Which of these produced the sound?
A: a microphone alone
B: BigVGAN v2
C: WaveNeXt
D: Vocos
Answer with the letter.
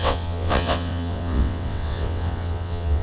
C